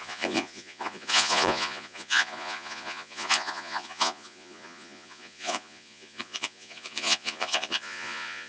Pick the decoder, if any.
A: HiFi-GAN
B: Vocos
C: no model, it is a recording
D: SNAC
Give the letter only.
B